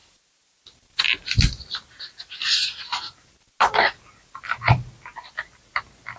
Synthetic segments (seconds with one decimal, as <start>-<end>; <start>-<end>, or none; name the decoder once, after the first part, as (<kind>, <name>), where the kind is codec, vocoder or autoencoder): none